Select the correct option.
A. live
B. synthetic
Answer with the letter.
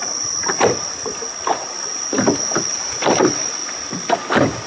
A